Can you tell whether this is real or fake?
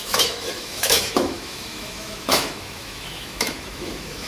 fake